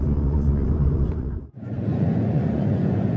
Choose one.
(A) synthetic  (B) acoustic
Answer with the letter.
A